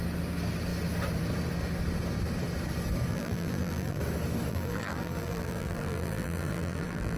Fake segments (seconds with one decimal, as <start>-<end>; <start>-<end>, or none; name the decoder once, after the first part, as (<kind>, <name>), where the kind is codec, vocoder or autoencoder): 3.1-4.0 (vocoder, BigVGAN v2); 4.5-7.2